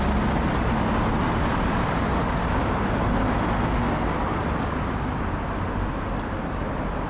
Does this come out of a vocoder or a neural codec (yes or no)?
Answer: no